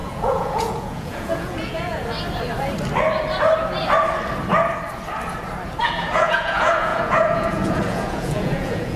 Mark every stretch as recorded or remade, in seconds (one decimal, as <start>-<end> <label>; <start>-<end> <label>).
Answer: 0.0-2.0 remade; 2.0-5.8 recorded; 5.8-9.0 remade